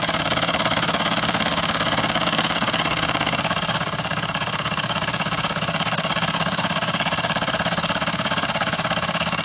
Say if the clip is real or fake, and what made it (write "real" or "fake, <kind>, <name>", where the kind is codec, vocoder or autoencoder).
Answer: fake, codec, DAC